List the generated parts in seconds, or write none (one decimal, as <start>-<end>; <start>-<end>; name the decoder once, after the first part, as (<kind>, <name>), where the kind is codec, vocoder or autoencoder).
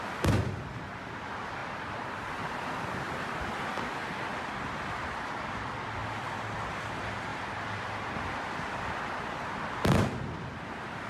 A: 1.6-3.2 (vocoder, BigVGAN v2); 4.3-4.8; 6.0-6.8; 7.3-11.1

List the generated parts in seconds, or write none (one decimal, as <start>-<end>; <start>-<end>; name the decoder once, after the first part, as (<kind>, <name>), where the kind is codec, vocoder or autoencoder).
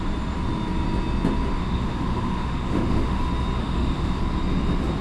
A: 1.6-3.2 (autoencoder, DAC-VAE); 3.6-4.2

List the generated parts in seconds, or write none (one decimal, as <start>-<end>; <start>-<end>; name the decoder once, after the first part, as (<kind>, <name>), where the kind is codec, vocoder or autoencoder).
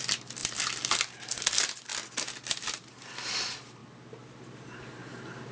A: none